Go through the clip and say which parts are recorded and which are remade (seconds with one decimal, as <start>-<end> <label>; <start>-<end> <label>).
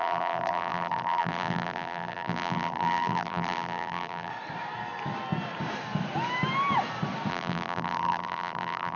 0.0-4.3 remade; 4.3-7.3 recorded; 7.3-9.0 remade